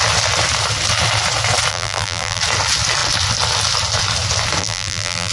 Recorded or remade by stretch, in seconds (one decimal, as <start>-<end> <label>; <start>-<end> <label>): 0.0-1.7 recorded; 1.7-2.4 remade; 2.4-4.6 recorded; 4.6-5.3 remade